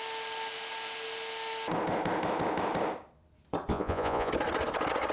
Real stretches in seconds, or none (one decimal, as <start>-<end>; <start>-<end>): 0.0-3.7; 4.3-5.1